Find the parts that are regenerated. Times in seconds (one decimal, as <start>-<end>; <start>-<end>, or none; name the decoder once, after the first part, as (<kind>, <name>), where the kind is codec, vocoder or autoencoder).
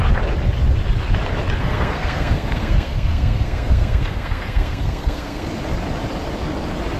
1.6-5.5 (codec, SNAC)